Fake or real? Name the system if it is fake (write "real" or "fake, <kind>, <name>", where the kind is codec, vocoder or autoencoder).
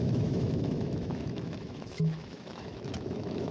fake, autoencoder, DAC-VAE